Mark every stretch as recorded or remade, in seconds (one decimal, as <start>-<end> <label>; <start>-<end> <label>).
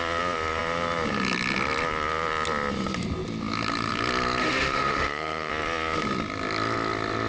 0.0-4.4 recorded; 4.4-5.5 remade; 5.5-7.3 recorded